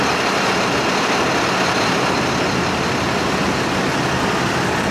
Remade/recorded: recorded